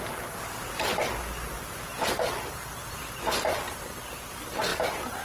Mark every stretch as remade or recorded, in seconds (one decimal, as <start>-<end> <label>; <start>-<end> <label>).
0.0-4.7 recorded; 4.7-5.2 remade